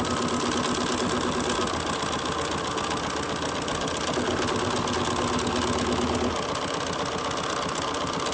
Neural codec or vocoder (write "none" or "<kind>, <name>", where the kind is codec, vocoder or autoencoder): none